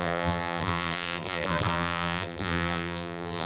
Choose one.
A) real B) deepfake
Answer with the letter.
B